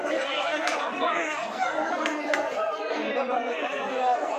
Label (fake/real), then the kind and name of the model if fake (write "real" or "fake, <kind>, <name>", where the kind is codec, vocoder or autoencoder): fake, codec, SNAC